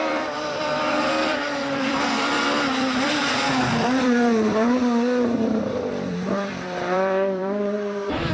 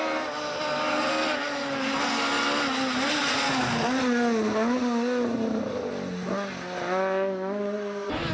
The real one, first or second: second